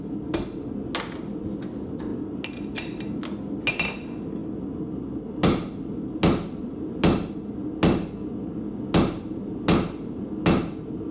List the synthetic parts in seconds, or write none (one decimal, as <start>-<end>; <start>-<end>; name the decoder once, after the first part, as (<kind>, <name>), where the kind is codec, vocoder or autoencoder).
none